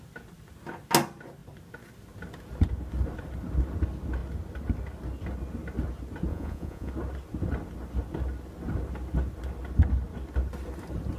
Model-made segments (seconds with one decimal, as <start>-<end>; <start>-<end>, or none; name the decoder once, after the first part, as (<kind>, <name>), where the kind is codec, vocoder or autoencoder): 6.3-6.9 (vocoder, Vocos)